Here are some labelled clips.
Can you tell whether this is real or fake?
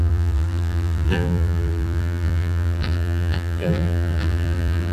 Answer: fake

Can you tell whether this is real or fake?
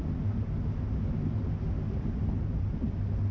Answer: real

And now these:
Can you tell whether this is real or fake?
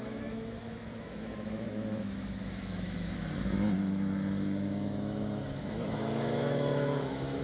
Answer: fake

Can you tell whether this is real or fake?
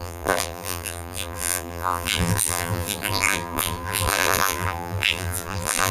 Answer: fake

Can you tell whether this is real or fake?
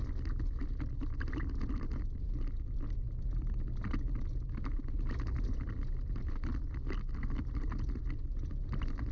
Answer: real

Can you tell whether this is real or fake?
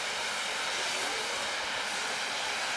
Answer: real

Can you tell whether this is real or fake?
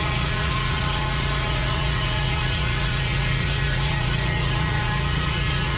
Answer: fake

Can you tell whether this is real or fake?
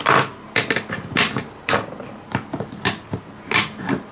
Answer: real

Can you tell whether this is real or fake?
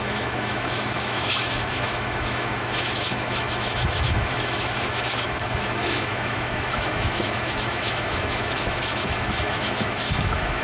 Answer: fake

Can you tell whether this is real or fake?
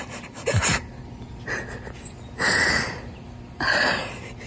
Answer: real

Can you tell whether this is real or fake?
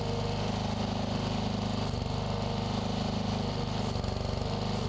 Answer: real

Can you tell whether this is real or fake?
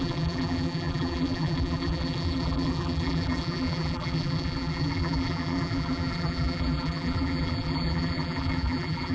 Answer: fake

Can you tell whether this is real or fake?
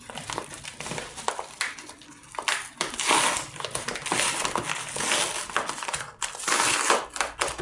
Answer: real